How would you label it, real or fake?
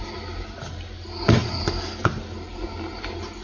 real